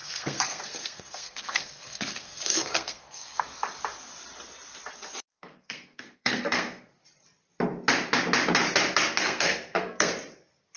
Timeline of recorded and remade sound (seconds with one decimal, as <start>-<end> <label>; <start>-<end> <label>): 0.0-3.4 remade; 3.4-5.3 recorded; 5.3-6.9 remade; 6.9-9.2 recorded; 9.2-10.1 remade; 10.1-10.8 recorded